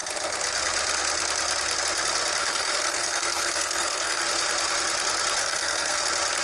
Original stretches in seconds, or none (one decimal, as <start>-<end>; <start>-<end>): 0.0-2.4; 4.2-5.4; 6.0-6.4